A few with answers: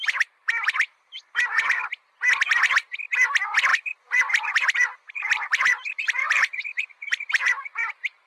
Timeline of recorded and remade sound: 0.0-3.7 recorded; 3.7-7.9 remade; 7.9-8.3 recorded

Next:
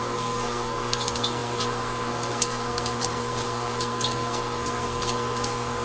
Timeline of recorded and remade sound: 0.0-5.8 remade

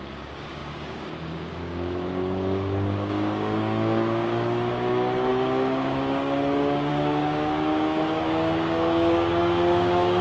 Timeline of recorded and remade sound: 0.0-10.2 remade

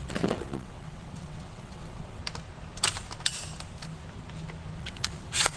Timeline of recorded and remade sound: 0.0-2.2 remade; 2.2-4.8 recorded; 4.8-5.6 remade